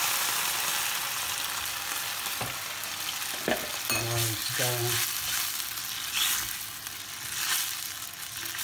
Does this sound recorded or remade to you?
recorded